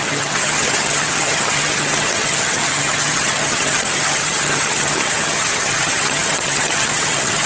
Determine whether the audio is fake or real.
fake